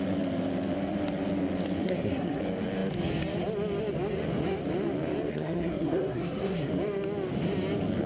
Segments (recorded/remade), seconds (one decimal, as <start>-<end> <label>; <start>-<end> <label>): 0.0-1.8 recorded; 1.8-2.4 remade; 2.4-5.3 recorded; 5.3-6.7 remade; 6.7-8.1 recorded